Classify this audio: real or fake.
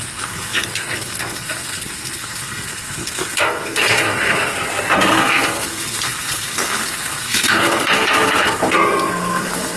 fake